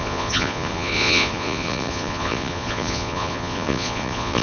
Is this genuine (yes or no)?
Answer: no